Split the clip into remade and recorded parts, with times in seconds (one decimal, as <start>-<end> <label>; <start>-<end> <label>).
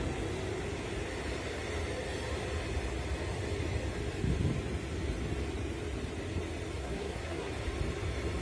0.0-6.8 recorded; 6.8-7.5 remade; 7.5-8.4 recorded